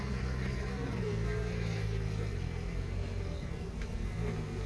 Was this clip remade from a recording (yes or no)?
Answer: yes